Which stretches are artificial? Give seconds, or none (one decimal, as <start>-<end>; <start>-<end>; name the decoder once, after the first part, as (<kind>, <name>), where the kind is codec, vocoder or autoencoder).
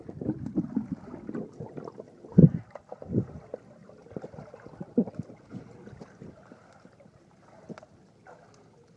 none